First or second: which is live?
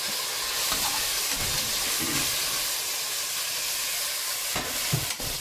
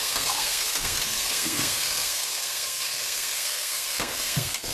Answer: first